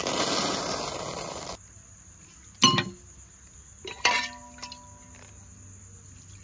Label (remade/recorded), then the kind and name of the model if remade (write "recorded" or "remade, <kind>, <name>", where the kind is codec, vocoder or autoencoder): recorded